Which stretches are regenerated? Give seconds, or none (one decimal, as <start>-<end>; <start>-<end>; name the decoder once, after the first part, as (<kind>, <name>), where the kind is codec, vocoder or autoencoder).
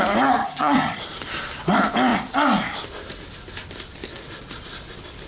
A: 0.4-1.0 (vocoder, HiFi-GAN)